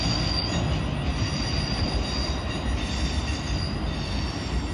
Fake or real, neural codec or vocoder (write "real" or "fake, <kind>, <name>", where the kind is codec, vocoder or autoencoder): real